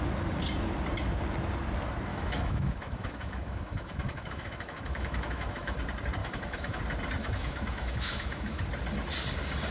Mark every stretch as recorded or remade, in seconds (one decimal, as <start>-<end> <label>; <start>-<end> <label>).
0.0-2.1 recorded; 2.1-5.8 remade; 5.8-6.2 recorded; 6.2-6.8 remade; 6.8-7.2 recorded; 7.2-8.6 remade; 8.6-9.7 recorded